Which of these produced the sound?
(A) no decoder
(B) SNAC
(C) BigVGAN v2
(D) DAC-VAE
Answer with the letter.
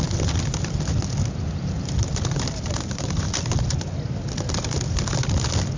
A